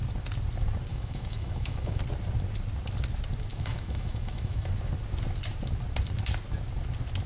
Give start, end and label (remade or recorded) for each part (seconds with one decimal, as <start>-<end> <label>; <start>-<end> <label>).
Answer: 0.0-0.9 recorded; 0.9-2.0 remade; 2.0-3.5 recorded; 3.5-4.7 remade; 4.7-7.3 recorded